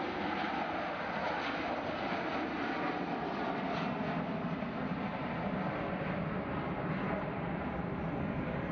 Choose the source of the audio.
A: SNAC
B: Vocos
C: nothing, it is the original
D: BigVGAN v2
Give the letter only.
C